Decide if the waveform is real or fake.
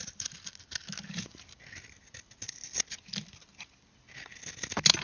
real